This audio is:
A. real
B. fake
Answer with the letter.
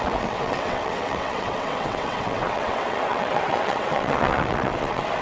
B